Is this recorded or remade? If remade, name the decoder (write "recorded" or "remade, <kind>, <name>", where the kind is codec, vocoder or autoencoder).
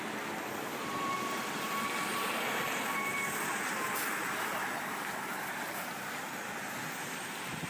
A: recorded